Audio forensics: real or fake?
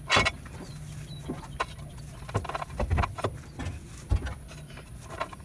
real